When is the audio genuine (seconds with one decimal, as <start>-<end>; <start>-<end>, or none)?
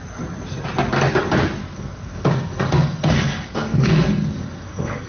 0.0-1.6